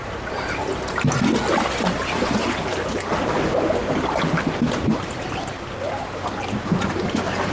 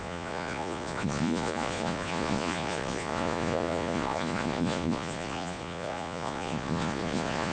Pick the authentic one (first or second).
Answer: first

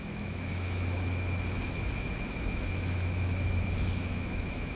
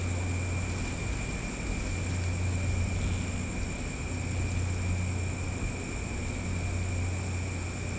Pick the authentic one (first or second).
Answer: second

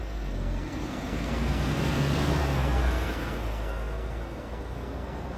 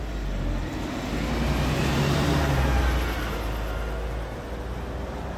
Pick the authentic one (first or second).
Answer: second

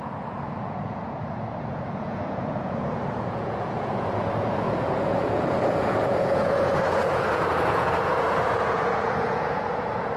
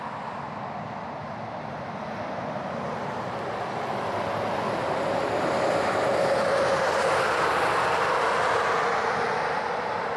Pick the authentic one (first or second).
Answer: second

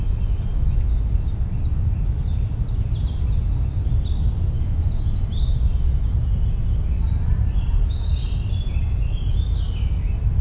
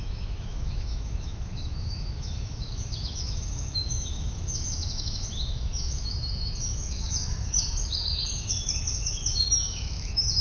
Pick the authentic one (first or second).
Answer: first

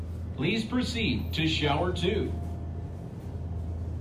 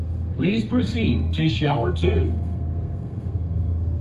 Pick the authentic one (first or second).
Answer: first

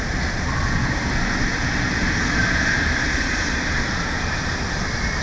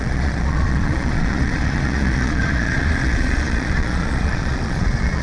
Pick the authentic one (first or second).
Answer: first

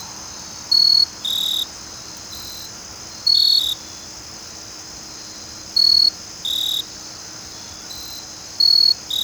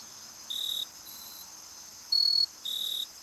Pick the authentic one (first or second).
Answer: first